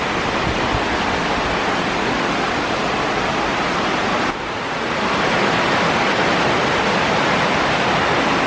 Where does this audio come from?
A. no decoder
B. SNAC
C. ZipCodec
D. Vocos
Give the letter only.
A